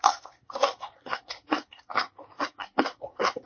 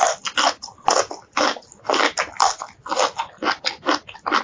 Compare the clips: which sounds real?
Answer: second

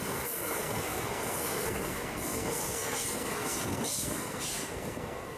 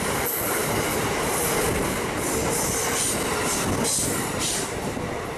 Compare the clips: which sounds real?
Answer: second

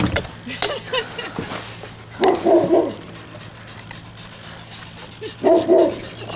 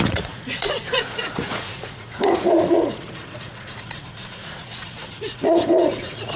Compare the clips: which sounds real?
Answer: first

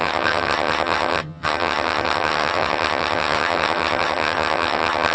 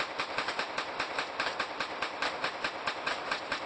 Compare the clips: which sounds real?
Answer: second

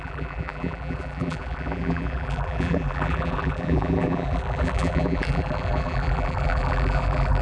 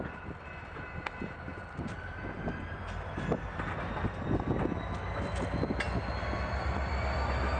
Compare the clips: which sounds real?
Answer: second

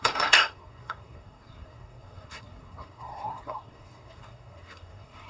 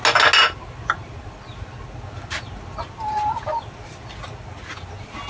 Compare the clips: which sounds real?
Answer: second